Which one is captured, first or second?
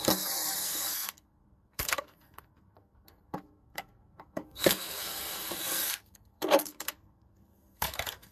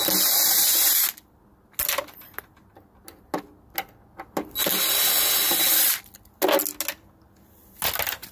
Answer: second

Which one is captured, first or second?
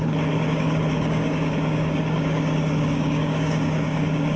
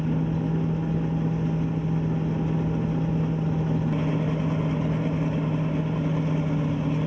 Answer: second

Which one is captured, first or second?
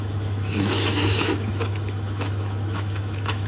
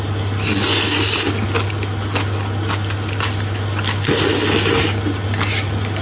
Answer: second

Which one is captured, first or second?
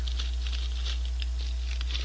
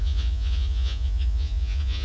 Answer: first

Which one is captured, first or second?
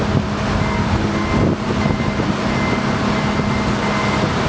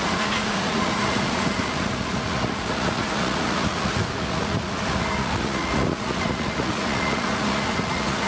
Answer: first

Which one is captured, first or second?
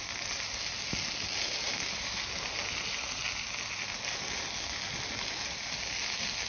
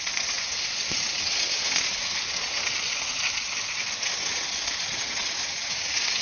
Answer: first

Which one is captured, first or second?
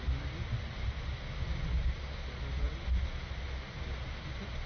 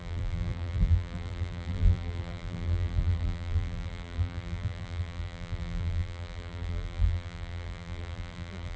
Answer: first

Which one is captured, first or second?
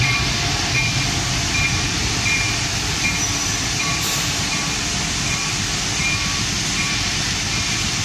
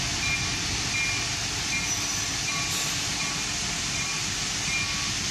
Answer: second